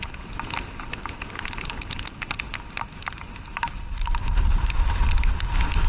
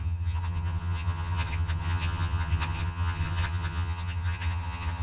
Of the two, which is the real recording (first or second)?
first